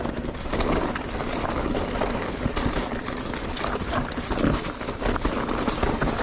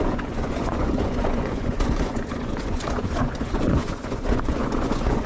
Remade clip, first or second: second